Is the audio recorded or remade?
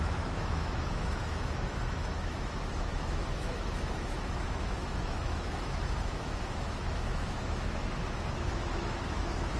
remade